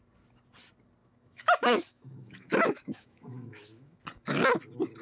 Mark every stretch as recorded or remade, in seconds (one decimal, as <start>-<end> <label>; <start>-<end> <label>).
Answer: 0.0-1.0 recorded; 1.0-4.0 remade; 4.0-5.0 recorded

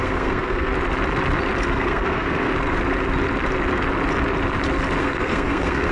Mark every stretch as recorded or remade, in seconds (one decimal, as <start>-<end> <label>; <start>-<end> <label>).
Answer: 0.0-0.7 remade; 0.7-1.7 recorded; 1.7-2.5 remade; 2.5-5.0 recorded; 5.0-5.9 remade

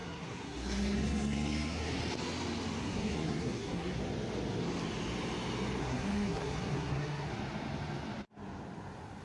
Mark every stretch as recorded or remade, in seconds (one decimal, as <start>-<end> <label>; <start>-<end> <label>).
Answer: 0.0-2.0 remade; 2.0-2.8 recorded; 2.8-4.0 remade; 4.0-5.8 recorded; 5.8-7.3 remade; 7.3-9.2 recorded

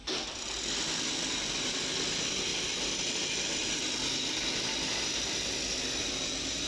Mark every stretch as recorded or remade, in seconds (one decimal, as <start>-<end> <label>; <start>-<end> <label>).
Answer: 0.0-0.8 recorded; 0.8-6.7 remade

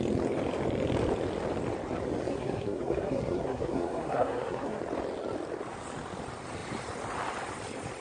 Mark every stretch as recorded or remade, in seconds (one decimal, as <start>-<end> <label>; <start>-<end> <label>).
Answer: 0.0-2.3 recorded; 2.3-4.8 remade; 4.8-8.0 recorded

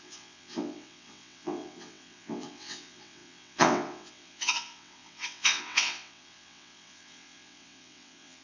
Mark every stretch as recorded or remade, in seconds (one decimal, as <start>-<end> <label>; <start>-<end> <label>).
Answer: 0.0-8.4 remade

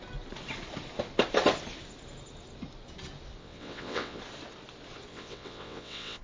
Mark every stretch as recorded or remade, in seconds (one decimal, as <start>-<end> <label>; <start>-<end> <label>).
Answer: 0.0-3.4 recorded; 3.4-4.2 remade; 4.2-5.1 recorded; 5.1-6.2 remade